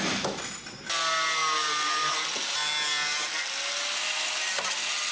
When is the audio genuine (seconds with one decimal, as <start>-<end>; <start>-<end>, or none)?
0.0-5.1